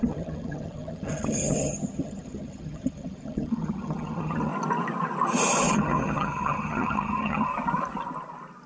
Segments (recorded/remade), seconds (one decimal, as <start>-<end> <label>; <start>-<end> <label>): 0.0-4.5 remade; 4.5-5.7 recorded; 5.7-7.5 remade; 7.5-8.7 recorded